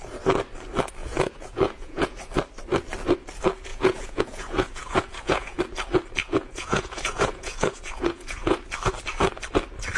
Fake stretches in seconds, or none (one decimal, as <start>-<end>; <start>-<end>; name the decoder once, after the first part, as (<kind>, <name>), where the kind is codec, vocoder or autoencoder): 1.0-2.2 (vocoder, Vocos); 3.7-5.6; 6.2-8.6